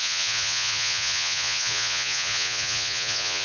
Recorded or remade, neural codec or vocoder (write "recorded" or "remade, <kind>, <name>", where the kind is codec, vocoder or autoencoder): remade, vocoder, Vocos